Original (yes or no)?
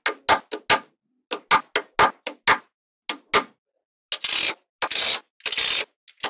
yes